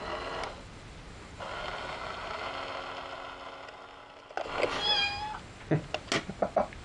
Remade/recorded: recorded